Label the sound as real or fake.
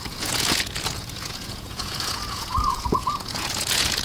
fake